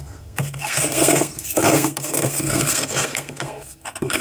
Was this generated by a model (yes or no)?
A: yes